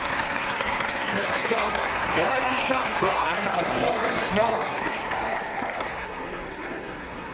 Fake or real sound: fake